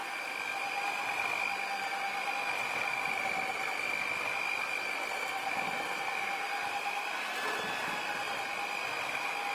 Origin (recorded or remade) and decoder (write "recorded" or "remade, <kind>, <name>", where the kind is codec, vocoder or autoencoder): recorded